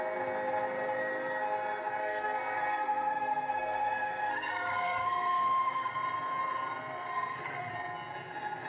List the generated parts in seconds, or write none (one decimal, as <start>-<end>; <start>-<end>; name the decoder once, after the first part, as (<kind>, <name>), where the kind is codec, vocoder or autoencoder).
2.0-5.9 (codec, SNAC); 7.1-7.7